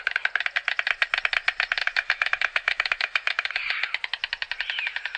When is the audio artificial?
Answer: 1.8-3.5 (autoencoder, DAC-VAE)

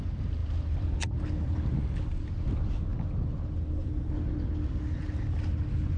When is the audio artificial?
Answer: none